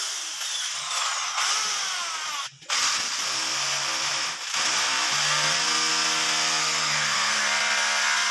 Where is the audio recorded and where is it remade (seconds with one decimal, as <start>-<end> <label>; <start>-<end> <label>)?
0.0-6.6 recorded; 6.6-7.4 remade; 7.4-8.3 recorded